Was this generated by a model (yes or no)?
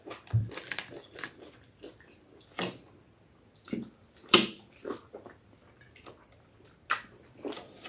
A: no